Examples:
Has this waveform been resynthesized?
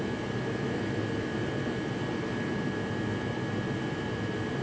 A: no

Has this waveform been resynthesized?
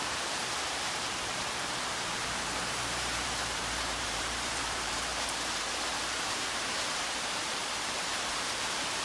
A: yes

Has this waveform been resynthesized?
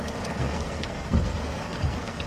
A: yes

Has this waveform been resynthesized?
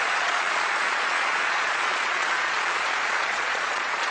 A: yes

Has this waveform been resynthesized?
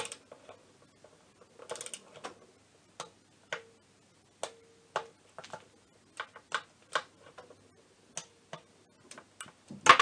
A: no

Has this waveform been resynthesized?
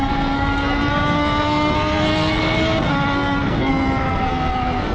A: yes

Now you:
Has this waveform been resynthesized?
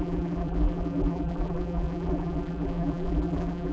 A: yes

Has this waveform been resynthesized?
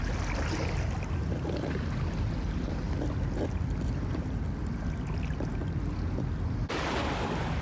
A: no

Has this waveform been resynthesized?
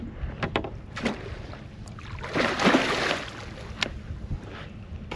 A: no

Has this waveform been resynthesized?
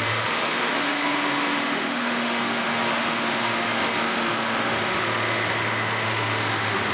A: yes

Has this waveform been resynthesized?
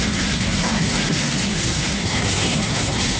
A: yes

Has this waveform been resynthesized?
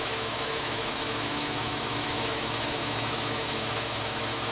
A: yes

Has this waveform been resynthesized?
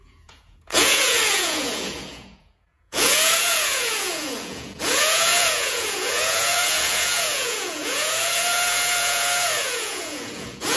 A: yes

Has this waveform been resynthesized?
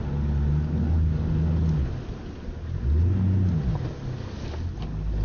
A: no